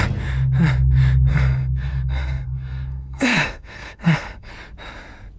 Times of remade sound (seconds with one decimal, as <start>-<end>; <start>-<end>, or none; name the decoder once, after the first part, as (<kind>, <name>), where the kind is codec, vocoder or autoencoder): 1.3-4.5 (codec, SNAC)